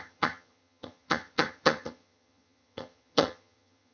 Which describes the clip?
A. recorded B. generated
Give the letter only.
B